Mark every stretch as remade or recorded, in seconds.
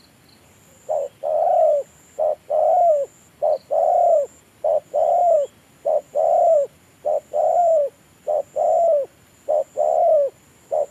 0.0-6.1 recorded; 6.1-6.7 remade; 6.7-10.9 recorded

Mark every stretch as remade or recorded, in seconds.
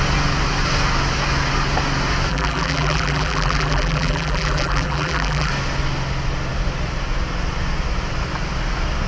0.0-2.3 recorded; 2.3-5.5 remade; 5.5-9.1 recorded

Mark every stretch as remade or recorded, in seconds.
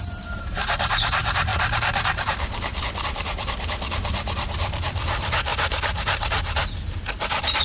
0.0-7.6 remade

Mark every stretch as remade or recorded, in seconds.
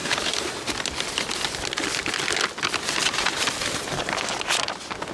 0.0-0.5 remade; 0.5-3.0 recorded; 3.0-4.0 remade; 4.0-5.1 recorded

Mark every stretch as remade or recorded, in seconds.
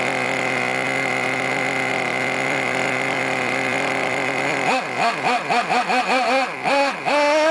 0.0-1.9 recorded; 1.9-4.8 remade; 4.8-7.5 recorded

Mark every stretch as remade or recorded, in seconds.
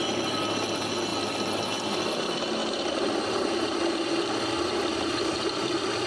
0.0-2.6 recorded; 2.6-6.1 remade